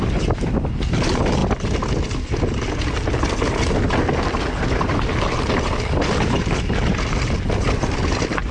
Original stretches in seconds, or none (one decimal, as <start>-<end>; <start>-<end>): 0.0-8.5